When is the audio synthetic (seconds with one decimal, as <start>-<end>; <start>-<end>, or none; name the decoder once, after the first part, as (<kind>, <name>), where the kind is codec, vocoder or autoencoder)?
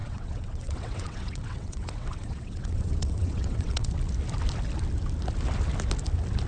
0.0-3.9 (vocoder, WaveNeXt)